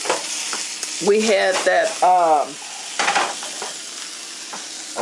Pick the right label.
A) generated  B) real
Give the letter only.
B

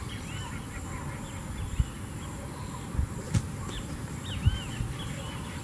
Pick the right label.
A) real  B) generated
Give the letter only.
A